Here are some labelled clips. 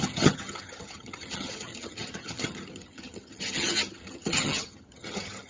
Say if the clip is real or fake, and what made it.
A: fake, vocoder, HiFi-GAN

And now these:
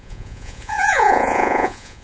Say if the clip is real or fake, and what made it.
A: fake, vocoder, Vocos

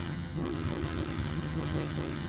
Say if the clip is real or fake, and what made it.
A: fake, vocoder, HiFi-GAN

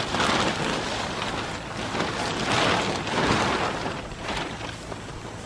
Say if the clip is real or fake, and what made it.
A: real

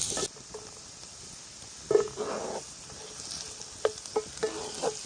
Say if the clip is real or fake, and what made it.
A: real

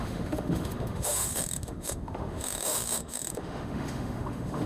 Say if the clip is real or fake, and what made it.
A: fake, autoencoder, DAC-VAE